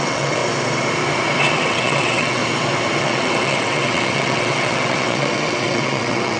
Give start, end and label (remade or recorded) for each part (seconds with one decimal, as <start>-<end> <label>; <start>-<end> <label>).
0.0-0.4 remade; 0.4-1.5 recorded; 1.5-2.4 remade; 2.4-3.0 recorded; 3.0-6.4 remade